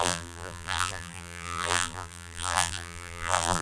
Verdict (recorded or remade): remade